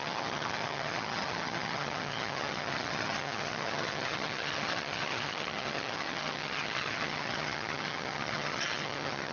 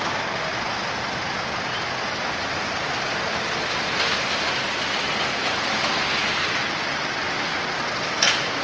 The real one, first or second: second